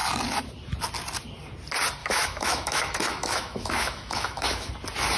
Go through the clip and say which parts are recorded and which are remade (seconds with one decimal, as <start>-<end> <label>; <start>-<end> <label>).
0.0-2.0 recorded; 2.0-4.7 remade; 4.7-5.2 recorded